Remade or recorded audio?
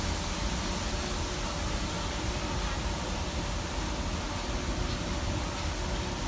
recorded